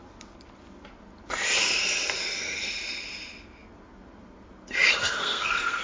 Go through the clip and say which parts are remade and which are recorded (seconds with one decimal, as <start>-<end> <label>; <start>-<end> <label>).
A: 0.0-5.0 recorded; 5.0-5.8 remade